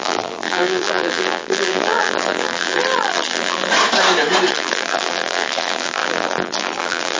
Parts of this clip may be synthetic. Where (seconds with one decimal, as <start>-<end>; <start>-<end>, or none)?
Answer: 0.0-3.7; 4.5-7.2